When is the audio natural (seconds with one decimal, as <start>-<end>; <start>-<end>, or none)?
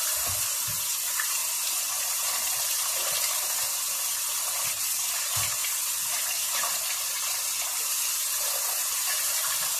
0.0-9.8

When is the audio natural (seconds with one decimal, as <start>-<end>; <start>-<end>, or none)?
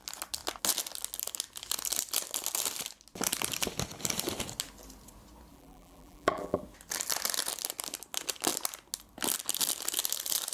0.0-5.5; 6.6-10.5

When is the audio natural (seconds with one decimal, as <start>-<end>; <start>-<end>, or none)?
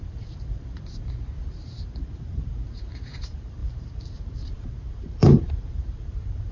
none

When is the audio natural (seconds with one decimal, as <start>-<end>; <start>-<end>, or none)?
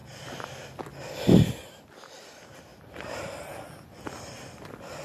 0.0-2.7; 3.2-5.0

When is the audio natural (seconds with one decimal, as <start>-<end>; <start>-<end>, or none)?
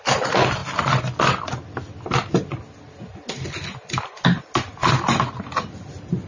0.0-6.3